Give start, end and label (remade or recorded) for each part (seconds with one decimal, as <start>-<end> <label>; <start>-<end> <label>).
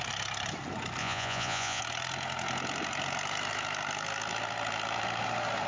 0.0-1.0 recorded; 1.0-1.8 remade; 1.8-5.7 recorded